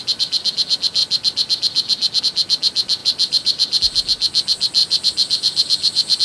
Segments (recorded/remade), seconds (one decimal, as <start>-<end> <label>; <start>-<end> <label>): 0.0-3.0 recorded; 3.0-3.8 remade; 3.8-4.8 recorded; 4.8-6.2 remade

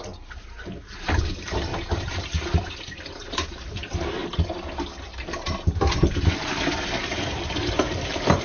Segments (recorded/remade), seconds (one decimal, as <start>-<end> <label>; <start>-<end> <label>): 0.0-1.7 remade; 1.7-2.8 recorded; 2.8-4.2 remade; 4.2-7.7 recorded; 7.7-8.4 remade

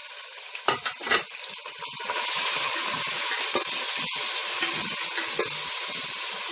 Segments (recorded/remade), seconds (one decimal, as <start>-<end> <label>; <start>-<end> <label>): 0.0-6.5 recorded

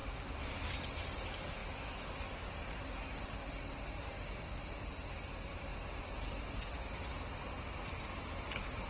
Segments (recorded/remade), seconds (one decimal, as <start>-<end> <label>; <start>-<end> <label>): 0.0-0.7 remade; 0.7-5.7 recorded; 5.7-8.9 remade

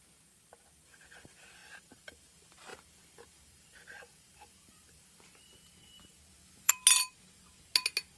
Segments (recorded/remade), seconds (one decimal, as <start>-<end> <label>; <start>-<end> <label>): 0.0-1.6 recorded; 1.6-2.1 remade; 2.1-2.7 recorded; 2.7-6.7 remade; 6.7-8.2 recorded

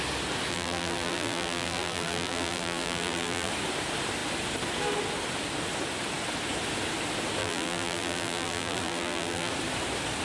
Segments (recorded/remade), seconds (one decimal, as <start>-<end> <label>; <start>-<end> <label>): 0.0-0.5 recorded; 0.5-3.5 remade; 3.5-7.4 recorded; 7.4-9.5 remade; 9.5-10.2 recorded

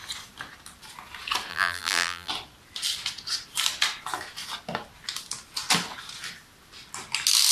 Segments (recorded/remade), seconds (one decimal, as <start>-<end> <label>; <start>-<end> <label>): 0.0-1.5 recorded; 1.5-2.3 remade; 2.3-7.5 recorded

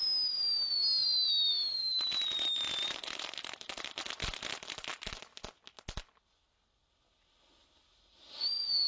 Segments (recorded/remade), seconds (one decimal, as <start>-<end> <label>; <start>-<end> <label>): 0.0-1.0 recorded; 1.0-4.0 remade; 4.0-8.9 recorded